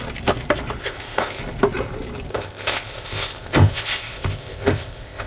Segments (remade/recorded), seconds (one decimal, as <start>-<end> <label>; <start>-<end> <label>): 0.0-0.8 recorded; 0.8-1.4 remade; 1.4-2.3 recorded; 2.3-5.3 remade

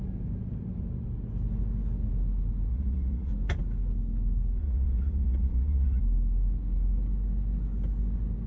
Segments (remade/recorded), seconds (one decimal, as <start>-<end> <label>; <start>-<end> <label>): 0.0-2.7 recorded; 2.7-3.3 remade; 3.3-4.6 recorded; 4.6-6.0 remade; 6.0-8.5 recorded